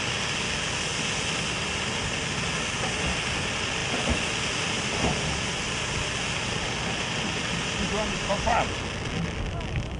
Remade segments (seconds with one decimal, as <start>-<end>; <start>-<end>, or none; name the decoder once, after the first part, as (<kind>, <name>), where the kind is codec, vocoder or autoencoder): none